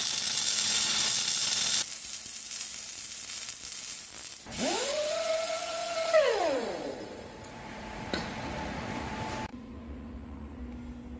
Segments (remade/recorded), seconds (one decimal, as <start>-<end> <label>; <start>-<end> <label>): 0.0-4.5 recorded; 4.5-9.1 remade; 9.1-9.5 recorded; 9.5-10.6 remade; 10.6-11.2 recorded